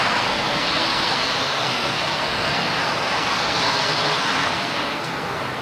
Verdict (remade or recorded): remade